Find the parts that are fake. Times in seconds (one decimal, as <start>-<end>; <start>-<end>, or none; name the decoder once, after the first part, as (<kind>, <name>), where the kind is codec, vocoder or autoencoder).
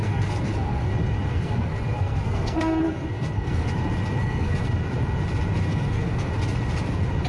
0.0-0.9 (codec, SNAC); 1.3-3.7; 4.2-4.7; 5.7-6.3